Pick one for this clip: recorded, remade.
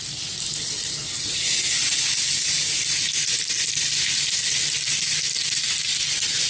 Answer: recorded